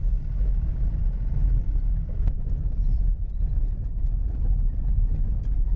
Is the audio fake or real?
real